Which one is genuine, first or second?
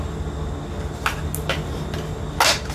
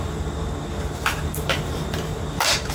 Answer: first